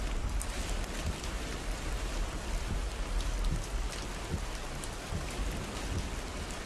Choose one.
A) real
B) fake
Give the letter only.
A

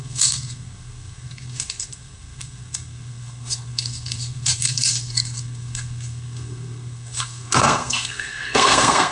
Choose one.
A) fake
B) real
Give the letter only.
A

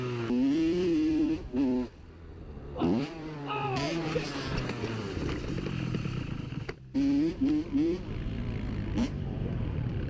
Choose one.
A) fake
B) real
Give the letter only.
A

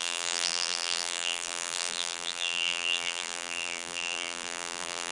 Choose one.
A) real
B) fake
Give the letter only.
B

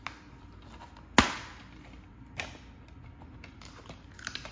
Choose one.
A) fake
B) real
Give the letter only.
B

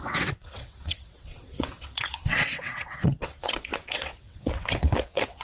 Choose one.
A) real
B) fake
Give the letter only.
B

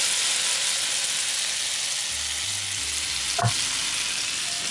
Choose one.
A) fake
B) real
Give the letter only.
B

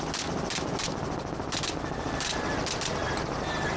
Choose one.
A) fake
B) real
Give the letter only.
B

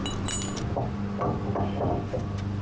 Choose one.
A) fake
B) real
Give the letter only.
B